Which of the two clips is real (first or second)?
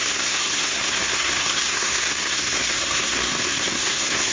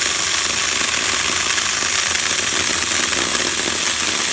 second